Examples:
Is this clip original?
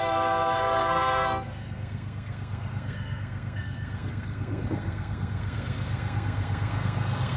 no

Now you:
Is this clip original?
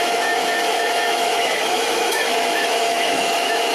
no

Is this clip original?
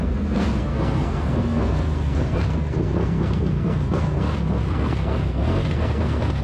no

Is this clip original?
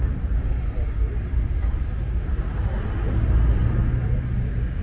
yes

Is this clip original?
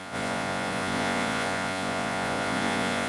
no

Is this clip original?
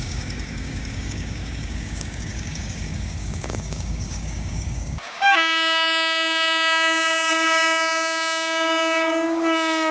no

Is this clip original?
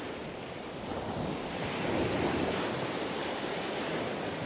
yes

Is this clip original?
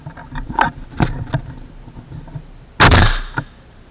yes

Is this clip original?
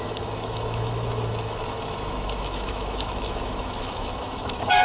no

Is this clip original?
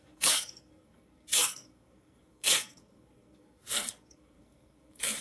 no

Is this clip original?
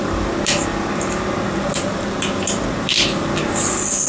yes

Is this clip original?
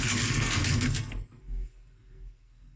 no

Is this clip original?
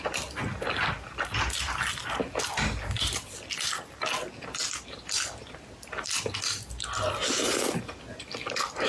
yes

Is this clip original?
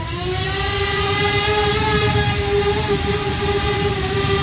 no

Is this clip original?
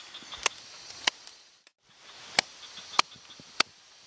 yes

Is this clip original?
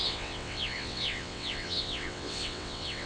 no